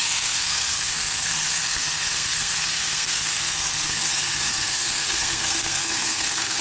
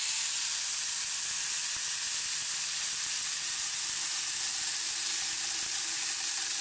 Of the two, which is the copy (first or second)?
first